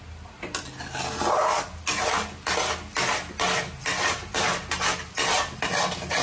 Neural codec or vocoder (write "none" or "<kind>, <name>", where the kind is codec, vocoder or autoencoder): none